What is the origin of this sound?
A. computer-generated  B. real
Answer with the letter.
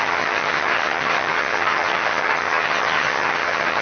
A